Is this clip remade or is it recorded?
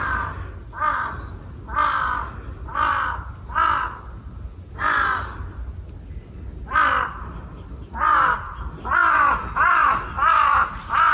recorded